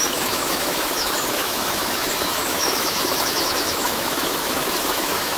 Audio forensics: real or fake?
fake